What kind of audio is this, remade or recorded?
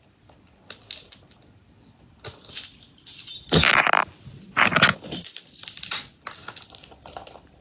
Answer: recorded